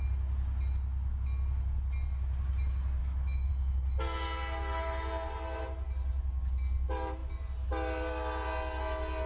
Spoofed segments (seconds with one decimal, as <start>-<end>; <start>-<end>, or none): 3.0-3.5